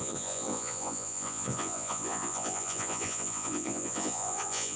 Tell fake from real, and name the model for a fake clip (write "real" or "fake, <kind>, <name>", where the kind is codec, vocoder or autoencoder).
fake, vocoder, Vocos